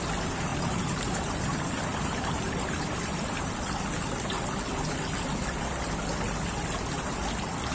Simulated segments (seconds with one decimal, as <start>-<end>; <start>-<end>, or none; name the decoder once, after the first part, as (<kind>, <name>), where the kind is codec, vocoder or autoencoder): 0.5-3.5 (vocoder, BigVGAN v2)